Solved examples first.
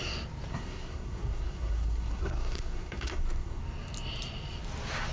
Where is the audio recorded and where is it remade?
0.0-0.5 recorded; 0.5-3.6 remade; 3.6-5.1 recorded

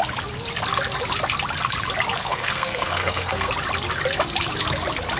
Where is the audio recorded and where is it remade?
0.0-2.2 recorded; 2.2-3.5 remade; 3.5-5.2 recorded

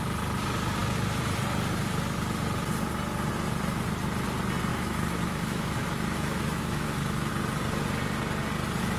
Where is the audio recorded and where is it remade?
0.0-4.7 recorded; 4.7-7.3 remade; 7.3-9.0 recorded